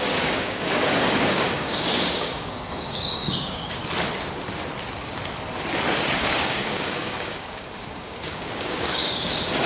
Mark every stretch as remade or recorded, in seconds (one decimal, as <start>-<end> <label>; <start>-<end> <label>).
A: 0.0-3.8 remade; 3.8-6.2 recorded; 6.2-9.7 remade